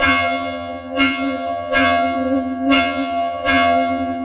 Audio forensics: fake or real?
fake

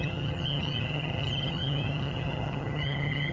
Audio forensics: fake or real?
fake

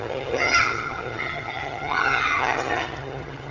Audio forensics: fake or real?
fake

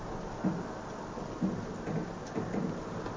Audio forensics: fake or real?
real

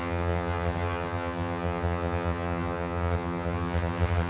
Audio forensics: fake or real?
fake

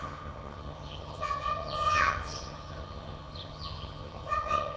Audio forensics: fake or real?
fake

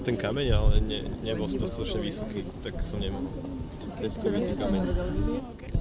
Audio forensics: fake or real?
real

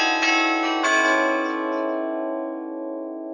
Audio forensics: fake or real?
real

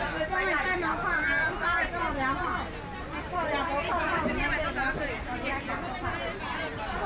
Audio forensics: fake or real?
real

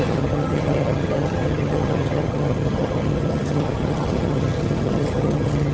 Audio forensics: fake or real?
fake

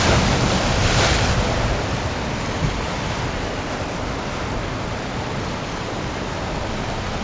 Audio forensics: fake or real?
real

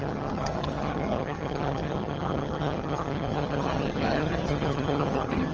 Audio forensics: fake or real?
fake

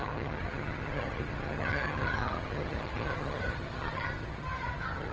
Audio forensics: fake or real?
fake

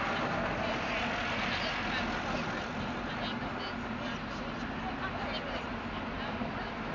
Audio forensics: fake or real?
real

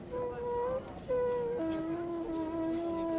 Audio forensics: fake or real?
real